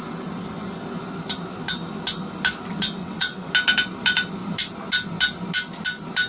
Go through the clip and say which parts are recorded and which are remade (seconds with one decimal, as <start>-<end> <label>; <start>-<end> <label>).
0.0-3.0 recorded; 3.0-3.5 remade; 3.5-6.3 recorded